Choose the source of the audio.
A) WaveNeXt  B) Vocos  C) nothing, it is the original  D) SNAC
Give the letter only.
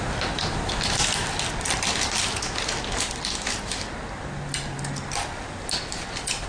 C